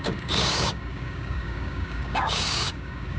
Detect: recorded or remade remade